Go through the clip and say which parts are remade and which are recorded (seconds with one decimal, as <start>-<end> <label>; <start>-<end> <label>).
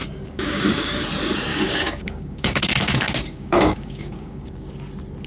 0.0-1.0 remade; 1.0-1.5 recorded; 1.5-4.7 remade; 4.7-5.3 recorded